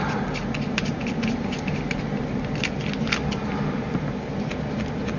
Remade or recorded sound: recorded